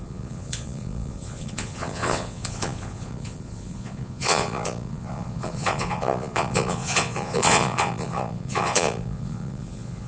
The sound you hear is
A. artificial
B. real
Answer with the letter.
A